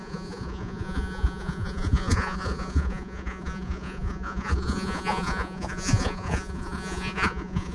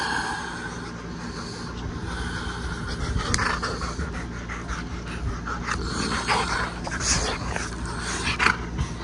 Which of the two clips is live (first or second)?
second